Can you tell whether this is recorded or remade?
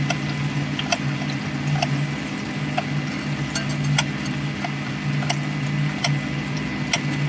recorded